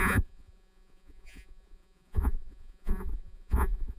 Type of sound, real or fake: fake